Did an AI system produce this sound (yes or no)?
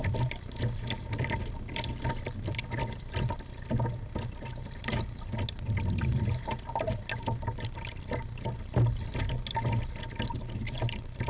no